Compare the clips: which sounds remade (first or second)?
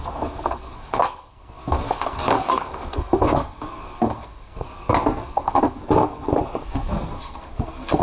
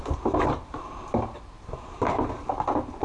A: first